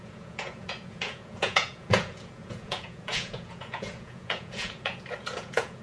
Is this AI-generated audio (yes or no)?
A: yes